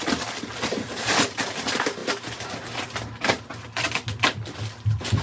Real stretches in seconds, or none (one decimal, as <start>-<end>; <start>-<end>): 0.0-5.2